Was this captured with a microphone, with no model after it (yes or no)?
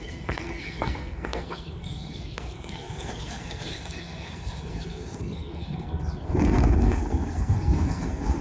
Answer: no